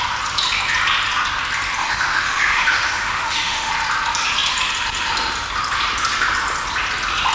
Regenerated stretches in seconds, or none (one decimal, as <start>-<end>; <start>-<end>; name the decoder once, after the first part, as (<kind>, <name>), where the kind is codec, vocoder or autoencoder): 1.8-3.7 (autoencoder, DAC-VAE)